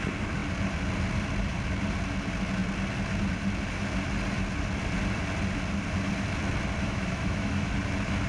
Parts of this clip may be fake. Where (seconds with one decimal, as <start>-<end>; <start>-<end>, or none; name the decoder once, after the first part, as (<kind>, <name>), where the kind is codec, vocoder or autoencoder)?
6.8-7.7 (autoencoder, DAC-VAE)